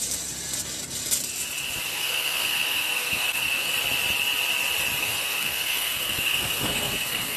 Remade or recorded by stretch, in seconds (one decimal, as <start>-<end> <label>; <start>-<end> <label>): 0.0-1.9 recorded; 1.9-3.7 remade; 3.7-5.0 recorded; 5.0-7.4 remade